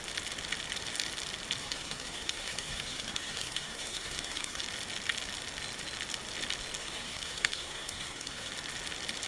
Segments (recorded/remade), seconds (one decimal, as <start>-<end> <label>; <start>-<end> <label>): 0.0-1.6 recorded; 1.6-4.6 remade; 4.6-6.8 recorded; 6.8-8.5 remade; 8.5-9.3 recorded